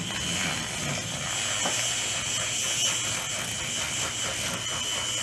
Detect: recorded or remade recorded